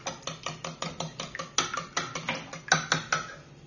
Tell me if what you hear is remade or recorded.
recorded